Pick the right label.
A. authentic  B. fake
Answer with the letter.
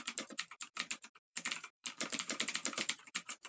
B